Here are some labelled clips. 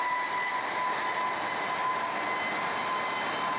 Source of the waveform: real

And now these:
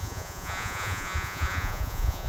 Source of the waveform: fake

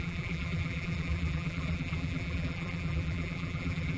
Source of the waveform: fake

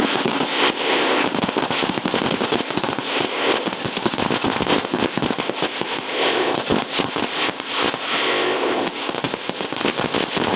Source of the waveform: fake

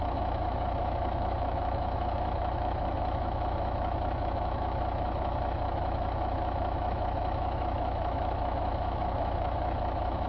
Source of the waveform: fake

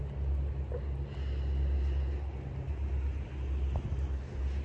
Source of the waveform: real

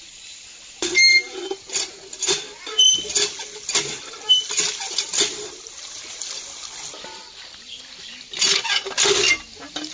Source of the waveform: real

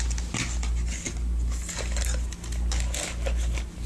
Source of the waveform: real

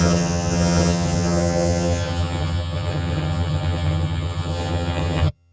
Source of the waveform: fake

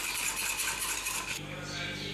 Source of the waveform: real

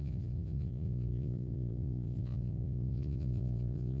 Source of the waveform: fake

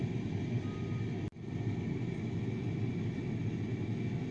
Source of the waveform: real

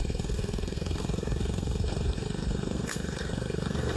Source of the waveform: fake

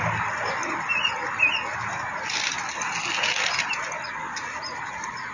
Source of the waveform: real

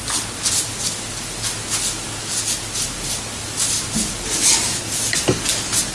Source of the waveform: real